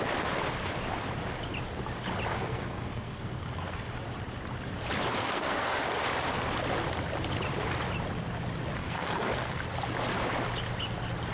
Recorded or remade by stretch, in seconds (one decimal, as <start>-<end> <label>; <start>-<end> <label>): 0.0-2.3 recorded; 2.3-3.9 remade; 3.9-5.2 recorded; 5.2-5.8 remade; 5.8-8.8 recorded; 8.8-9.6 remade; 9.6-11.3 recorded

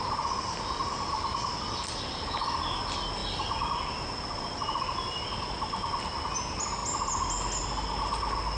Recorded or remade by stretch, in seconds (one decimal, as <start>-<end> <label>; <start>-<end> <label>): 0.0-3.2 recorded; 3.2-5.2 remade; 5.2-8.6 recorded

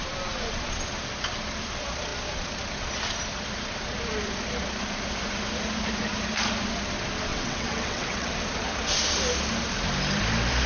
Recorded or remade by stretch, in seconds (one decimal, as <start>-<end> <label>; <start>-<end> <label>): 0.0-7.3 recorded; 7.3-8.3 remade; 8.3-10.7 recorded

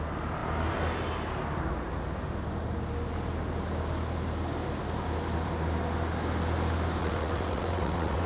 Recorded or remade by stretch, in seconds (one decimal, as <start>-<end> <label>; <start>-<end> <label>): 0.0-7.0 recorded; 7.0-8.3 remade

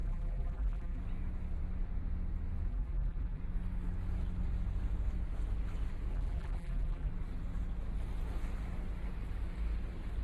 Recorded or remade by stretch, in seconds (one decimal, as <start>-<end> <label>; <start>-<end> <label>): 0.0-1.0 remade; 1.0-2.7 recorded; 2.7-3.4 remade; 3.4-6.1 recorded; 6.1-7.1 remade; 7.1-10.2 recorded

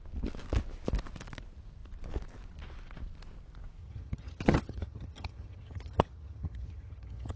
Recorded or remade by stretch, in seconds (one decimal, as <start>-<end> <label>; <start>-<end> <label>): 0.0-3.8 recorded; 3.8-7.4 remade

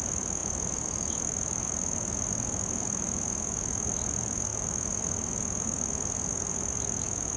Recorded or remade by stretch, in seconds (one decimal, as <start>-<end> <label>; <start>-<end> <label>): 0.0-7.4 remade

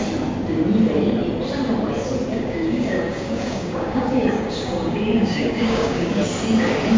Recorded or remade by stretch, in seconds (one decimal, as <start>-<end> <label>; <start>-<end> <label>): 0.0-2.3 recorded; 2.3-6.2 remade; 6.2-7.0 recorded